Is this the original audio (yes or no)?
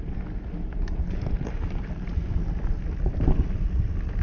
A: yes